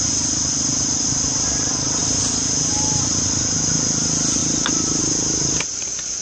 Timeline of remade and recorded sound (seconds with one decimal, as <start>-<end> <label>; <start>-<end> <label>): 0.0-4.4 recorded; 4.4-5.0 remade; 5.0-6.2 recorded

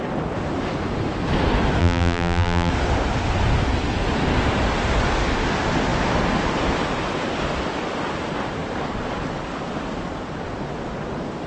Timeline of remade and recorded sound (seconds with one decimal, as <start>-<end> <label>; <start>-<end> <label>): 0.0-1.8 recorded; 1.8-2.7 remade; 2.7-11.5 recorded

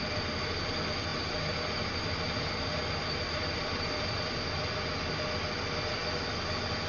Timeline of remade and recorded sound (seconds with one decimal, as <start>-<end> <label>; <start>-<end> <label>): 0.0-1.1 recorded; 1.1-4.2 remade; 4.2-6.9 recorded

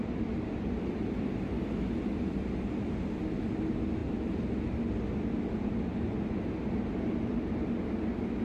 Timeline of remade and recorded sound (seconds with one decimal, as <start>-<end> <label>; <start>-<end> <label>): 0.0-8.4 recorded